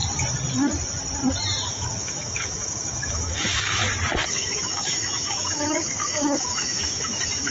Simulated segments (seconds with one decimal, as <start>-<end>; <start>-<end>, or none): 1.7-3.8; 4.3-7.5